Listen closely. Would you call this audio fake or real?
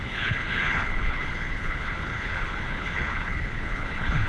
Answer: fake